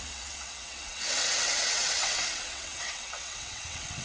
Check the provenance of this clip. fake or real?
fake